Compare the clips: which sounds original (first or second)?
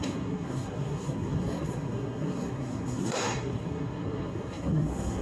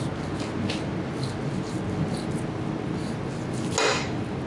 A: second